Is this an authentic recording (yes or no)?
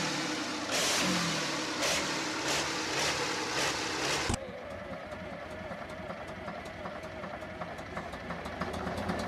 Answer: yes